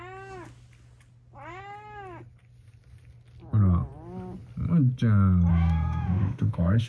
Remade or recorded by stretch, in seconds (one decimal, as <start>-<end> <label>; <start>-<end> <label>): 0.0-5.5 recorded; 5.5-6.9 remade